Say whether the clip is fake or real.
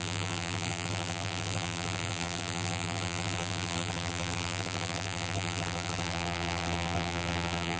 fake